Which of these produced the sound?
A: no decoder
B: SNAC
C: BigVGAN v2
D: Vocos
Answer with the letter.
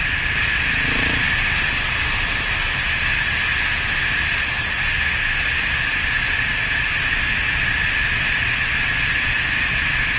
A